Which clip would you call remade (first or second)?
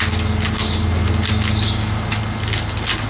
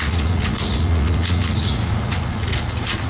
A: second